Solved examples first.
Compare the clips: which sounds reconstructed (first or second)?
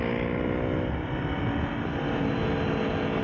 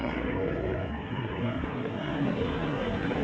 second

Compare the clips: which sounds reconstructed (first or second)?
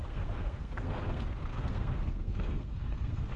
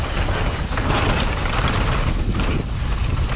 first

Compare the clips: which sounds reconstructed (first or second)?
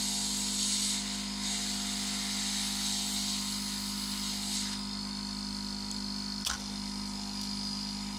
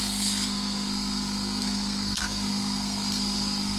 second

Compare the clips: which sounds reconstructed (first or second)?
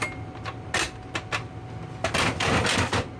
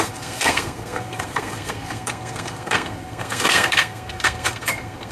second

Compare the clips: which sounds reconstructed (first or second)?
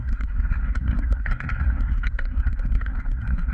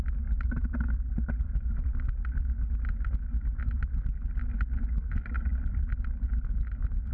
first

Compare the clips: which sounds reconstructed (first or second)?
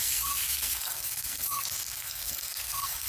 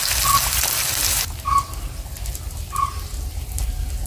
first